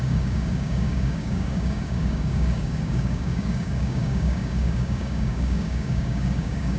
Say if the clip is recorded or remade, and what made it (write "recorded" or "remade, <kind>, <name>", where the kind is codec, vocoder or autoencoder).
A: remade, codec, DAC